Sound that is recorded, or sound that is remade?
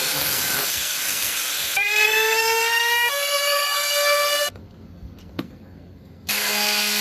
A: remade